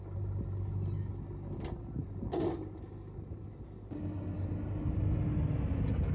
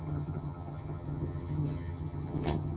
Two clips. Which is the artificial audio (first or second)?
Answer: second